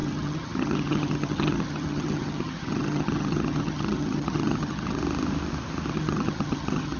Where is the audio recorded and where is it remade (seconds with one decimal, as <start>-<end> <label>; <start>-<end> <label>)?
0.0-5.0 remade; 5.0-5.9 recorded; 5.9-7.0 remade

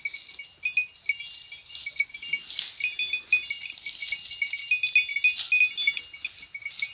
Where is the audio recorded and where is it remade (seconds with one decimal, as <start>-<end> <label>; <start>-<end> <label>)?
0.0-6.9 recorded

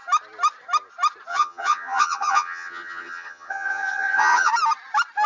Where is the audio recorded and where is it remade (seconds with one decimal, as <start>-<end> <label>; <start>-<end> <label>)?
0.0-1.3 recorded; 1.3-4.5 remade; 4.5-5.3 recorded

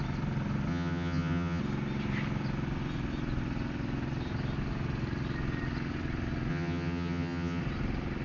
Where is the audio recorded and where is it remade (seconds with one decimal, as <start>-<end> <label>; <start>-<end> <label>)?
0.0-0.7 recorded; 0.7-1.6 remade; 1.6-6.5 recorded; 6.5-7.6 remade; 7.6-8.2 recorded

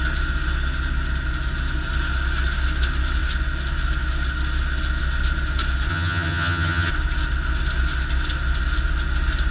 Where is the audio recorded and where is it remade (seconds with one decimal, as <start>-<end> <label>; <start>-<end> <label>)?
0.0-5.9 recorded; 5.9-6.9 remade; 6.9-9.5 recorded

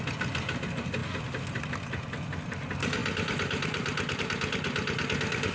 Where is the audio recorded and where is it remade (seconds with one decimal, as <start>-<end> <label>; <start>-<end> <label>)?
0.0-5.5 recorded

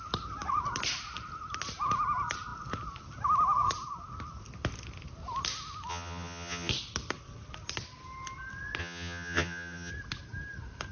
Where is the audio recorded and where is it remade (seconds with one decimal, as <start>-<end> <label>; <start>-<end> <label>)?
0.0-5.9 recorded; 5.9-6.7 remade; 6.7-8.8 recorded; 8.8-9.9 remade; 9.9-10.9 recorded